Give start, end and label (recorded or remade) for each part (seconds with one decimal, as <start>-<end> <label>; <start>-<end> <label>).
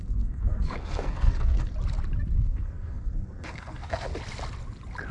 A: 0.0-1.7 remade; 1.7-2.4 recorded; 2.4-4.1 remade; 4.1-5.1 recorded